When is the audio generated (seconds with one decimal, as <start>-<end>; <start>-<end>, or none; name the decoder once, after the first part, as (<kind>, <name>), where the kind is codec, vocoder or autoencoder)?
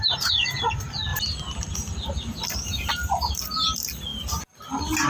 1.1-2.9 (vocoder, BigVGAN v2)